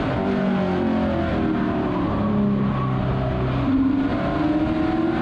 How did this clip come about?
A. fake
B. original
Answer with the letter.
B